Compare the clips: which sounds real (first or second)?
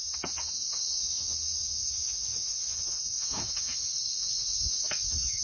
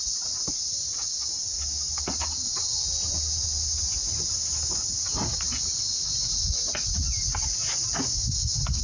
second